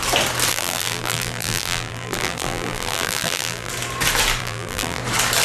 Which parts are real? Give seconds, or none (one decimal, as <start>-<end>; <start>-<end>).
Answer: 0.0-0.5; 3.7-4.4; 5.0-5.4